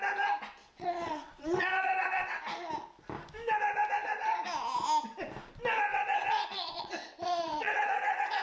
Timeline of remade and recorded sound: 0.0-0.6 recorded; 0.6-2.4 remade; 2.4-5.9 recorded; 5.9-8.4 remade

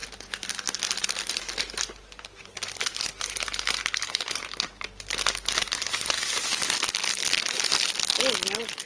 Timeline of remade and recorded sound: 0.0-8.9 recorded

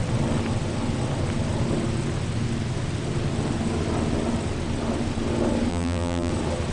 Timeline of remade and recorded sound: 0.0-5.7 recorded; 5.7-6.3 remade; 6.3-6.7 recorded

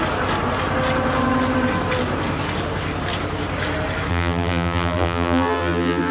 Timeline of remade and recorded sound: 0.0-4.1 recorded; 4.1-6.1 remade

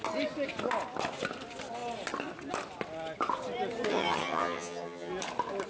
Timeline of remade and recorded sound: 0.0-3.9 recorded; 3.9-5.1 remade; 5.1-5.7 recorded